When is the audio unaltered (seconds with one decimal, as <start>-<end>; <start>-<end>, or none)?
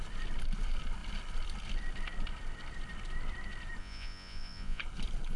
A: 0.0-3.8; 4.8-5.4